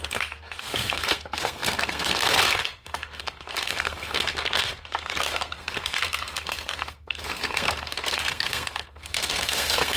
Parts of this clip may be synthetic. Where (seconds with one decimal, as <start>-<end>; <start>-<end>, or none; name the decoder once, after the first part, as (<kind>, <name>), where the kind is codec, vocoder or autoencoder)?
0.0-10.0 (codec, SNAC)